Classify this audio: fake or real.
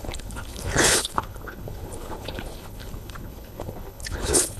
fake